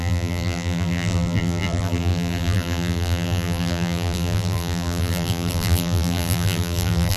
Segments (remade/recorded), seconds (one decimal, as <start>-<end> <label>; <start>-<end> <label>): 0.0-7.2 remade